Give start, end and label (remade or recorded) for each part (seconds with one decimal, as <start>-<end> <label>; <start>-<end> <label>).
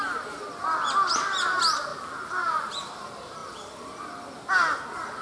0.0-5.2 recorded